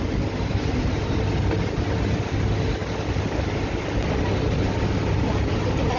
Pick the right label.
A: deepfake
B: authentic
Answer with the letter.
B